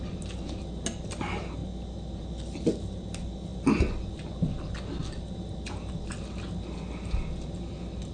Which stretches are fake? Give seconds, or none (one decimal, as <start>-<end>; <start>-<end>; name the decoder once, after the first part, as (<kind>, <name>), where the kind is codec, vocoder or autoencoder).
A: none